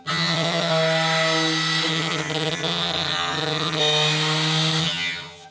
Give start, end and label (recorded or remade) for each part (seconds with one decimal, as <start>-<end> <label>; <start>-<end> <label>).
0.0-0.7 remade; 0.7-1.9 recorded; 1.9-3.8 remade; 3.8-4.8 recorded; 4.8-5.5 remade